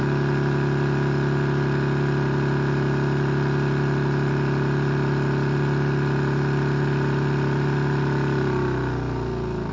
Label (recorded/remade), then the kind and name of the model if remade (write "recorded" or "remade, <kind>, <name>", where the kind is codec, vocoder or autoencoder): recorded